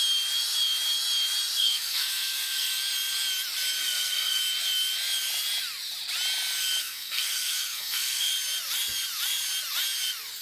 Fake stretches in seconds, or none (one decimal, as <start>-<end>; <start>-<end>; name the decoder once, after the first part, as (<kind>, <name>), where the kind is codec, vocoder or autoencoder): 1.6-2.7 (codec, SNAC); 3.8-4.4; 6.8-8.3